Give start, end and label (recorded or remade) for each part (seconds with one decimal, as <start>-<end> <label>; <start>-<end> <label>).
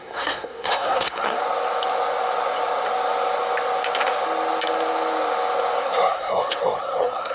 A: 0.0-1.4 remade; 1.4-5.8 recorded; 5.8-7.3 remade